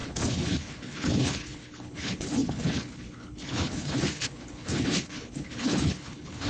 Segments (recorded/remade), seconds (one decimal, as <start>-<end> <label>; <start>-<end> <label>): 0.0-6.5 remade